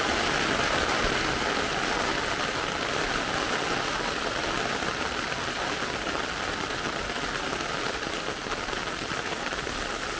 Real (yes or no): yes